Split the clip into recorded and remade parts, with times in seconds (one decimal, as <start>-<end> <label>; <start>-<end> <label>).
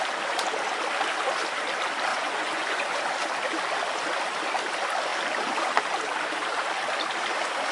0.0-2.1 recorded; 2.1-3.0 remade; 3.0-7.7 recorded